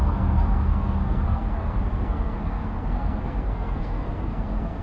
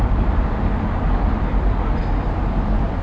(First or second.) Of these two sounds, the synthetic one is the first